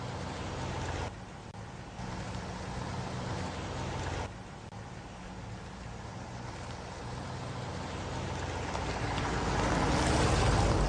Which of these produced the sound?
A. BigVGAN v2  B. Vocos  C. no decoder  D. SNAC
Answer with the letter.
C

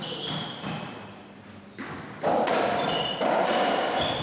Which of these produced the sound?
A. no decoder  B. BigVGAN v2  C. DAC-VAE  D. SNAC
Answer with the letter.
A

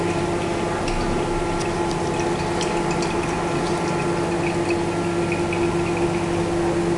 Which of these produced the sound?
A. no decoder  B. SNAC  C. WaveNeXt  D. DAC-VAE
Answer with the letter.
A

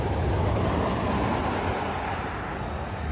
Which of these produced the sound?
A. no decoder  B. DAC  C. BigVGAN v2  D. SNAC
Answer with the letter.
A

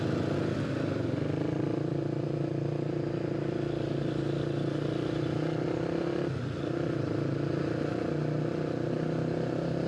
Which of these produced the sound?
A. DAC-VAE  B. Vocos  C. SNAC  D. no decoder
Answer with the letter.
D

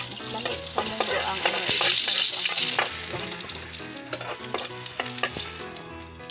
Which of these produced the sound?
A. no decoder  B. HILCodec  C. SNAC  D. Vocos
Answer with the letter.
A